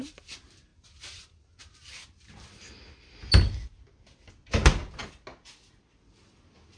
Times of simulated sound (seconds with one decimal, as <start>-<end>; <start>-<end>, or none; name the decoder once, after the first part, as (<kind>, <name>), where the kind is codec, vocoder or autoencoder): none